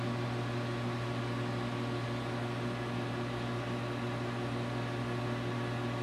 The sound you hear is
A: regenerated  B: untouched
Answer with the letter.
B